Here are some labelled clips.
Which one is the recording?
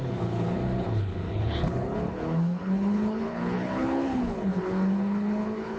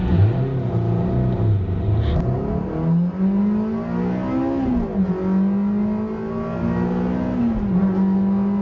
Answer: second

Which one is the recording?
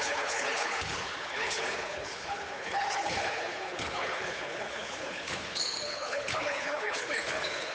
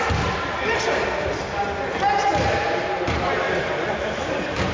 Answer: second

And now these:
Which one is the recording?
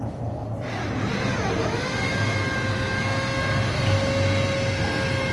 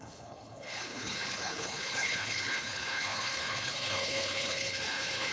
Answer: first